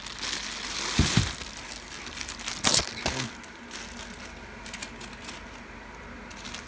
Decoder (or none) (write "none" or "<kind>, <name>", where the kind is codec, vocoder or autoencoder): none